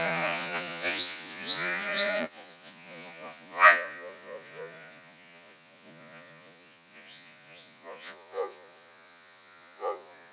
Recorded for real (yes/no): no